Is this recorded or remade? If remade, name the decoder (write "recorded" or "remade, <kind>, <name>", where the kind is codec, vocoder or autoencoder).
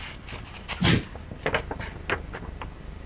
recorded